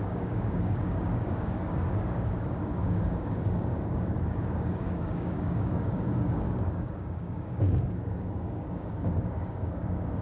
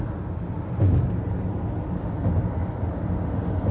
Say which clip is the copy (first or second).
first